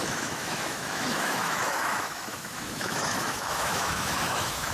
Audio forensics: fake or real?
fake